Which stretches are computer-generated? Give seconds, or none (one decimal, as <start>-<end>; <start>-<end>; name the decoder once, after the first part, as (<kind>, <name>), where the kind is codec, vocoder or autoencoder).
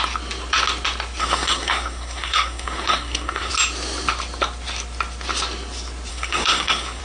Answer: 1.2-3.5 (codec, SNAC); 6.1-7.0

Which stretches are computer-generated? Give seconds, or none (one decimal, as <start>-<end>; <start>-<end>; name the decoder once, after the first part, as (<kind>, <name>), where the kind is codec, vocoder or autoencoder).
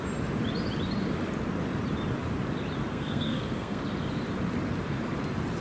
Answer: 2.9-3.8 (codec, SNAC)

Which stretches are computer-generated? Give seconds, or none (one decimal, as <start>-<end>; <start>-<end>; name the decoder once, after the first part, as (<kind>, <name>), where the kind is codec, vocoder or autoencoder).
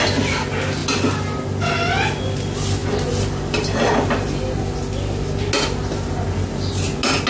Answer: none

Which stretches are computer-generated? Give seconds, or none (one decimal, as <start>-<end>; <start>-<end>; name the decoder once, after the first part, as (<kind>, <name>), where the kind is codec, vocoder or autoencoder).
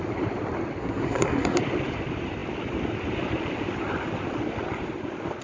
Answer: 0.8-1.6 (codec, SNAC)